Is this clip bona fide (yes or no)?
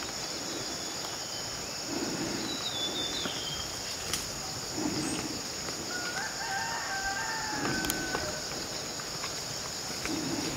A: yes